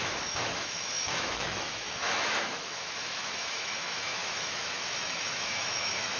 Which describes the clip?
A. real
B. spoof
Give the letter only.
B